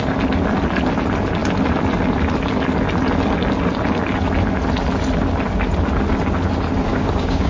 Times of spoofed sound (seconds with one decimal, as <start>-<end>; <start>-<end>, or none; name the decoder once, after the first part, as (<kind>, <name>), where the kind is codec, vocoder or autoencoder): 6.9-7.5 (codec, DAC)